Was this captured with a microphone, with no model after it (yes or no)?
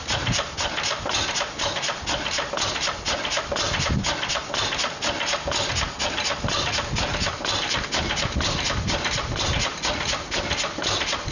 yes